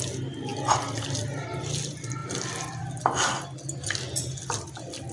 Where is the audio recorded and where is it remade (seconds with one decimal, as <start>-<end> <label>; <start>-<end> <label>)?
0.0-2.2 recorded; 2.2-3.3 remade; 3.3-5.1 recorded